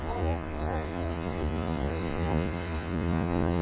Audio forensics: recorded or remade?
remade